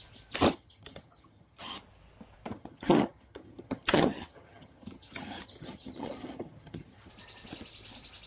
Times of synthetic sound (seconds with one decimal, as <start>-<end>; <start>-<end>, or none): 0.5-1.8; 2.5-7.1